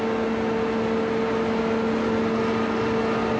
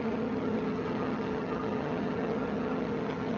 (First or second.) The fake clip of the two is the second